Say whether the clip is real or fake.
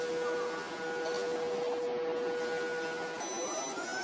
real